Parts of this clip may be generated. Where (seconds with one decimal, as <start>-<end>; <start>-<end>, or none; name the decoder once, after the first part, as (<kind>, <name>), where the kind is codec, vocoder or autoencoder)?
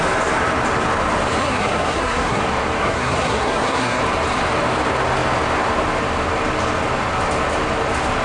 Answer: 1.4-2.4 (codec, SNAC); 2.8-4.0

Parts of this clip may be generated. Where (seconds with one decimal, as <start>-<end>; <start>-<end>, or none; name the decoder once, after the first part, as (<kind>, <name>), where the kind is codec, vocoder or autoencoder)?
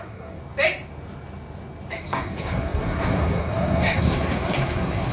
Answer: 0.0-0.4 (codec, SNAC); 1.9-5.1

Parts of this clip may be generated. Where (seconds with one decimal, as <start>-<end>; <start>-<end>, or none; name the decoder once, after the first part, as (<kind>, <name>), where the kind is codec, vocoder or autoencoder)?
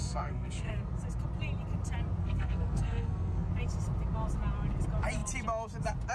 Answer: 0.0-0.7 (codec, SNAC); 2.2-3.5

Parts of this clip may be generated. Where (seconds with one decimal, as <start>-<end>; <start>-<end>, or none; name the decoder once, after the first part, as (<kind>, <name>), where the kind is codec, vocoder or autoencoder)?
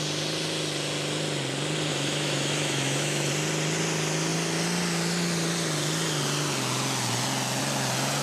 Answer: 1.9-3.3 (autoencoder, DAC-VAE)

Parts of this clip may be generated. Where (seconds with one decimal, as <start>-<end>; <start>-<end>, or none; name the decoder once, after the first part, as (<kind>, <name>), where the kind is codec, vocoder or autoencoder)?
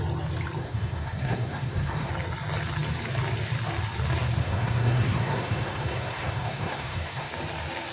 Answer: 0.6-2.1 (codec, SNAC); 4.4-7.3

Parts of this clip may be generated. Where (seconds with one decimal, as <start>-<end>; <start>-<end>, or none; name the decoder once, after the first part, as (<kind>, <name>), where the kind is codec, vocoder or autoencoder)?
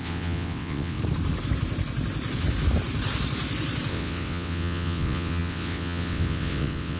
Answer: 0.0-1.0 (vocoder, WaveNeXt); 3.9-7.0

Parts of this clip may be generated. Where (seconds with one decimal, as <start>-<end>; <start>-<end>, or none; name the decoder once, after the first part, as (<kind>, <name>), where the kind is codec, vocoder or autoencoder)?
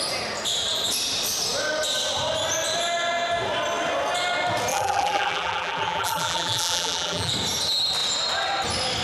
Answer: 4.7-7.3 (vocoder, BigVGAN v2)